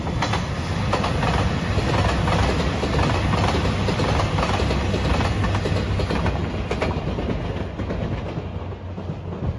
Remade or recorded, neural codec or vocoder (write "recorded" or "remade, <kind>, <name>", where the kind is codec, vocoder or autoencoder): recorded